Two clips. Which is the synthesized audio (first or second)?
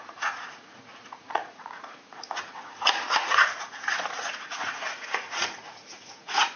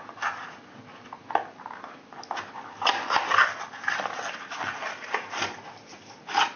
first